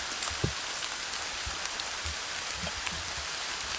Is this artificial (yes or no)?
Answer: no